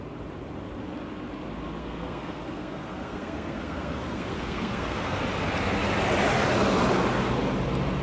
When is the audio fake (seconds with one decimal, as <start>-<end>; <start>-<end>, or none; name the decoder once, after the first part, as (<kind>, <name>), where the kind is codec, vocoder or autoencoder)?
1.8-5.2 (codec, SNAC)

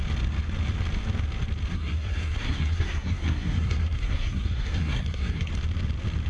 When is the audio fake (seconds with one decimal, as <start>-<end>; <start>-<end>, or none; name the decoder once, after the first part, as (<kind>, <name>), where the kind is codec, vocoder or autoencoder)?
1.7-5.5 (codec, SNAC)

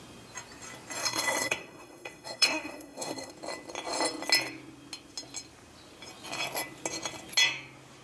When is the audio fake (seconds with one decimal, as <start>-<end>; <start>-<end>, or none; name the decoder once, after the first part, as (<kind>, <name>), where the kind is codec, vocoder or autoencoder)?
1.0-3.3 (codec, SNAC)

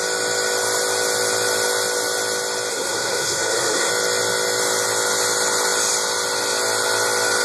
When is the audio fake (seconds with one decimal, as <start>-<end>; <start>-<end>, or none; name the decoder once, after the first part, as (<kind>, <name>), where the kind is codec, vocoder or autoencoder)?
2.7-3.9 (codec, SNAC)